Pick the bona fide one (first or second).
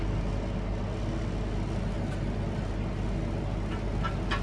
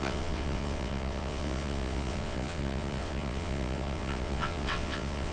first